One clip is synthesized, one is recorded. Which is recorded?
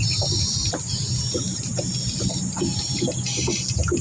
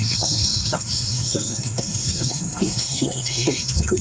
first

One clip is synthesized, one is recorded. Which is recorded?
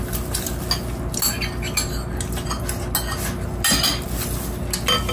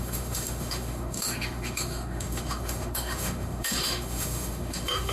first